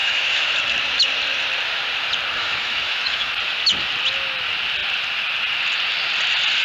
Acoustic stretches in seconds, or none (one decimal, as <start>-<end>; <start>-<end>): 0.5-2.4; 3.3-6.6